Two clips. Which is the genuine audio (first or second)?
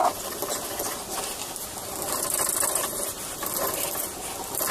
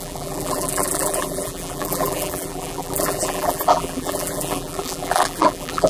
first